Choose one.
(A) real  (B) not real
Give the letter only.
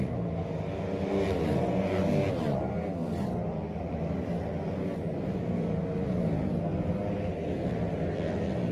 A